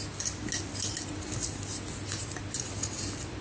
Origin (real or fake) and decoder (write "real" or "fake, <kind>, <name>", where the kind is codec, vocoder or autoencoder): real